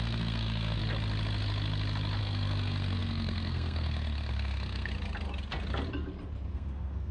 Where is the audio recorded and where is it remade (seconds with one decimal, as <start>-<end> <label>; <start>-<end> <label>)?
0.0-0.8 remade; 0.8-2.2 recorded; 2.2-4.9 remade; 4.9-6.5 recorded; 6.5-7.1 remade